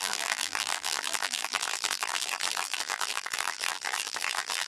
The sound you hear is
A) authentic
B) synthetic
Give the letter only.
B